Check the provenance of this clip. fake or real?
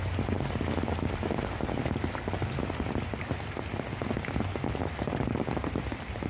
real